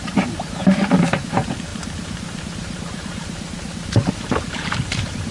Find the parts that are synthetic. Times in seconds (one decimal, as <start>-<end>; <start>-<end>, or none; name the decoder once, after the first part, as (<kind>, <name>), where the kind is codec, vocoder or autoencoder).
0.0-5.3 (vocoder, BigVGAN v2)